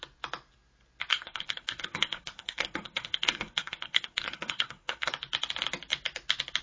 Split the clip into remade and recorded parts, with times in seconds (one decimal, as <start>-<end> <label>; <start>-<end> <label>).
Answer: 0.0-1.1 recorded; 1.1-5.1 remade; 5.1-6.6 recorded